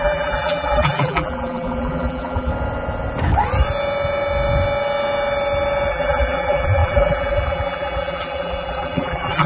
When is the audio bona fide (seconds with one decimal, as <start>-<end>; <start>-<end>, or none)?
2.5-5.9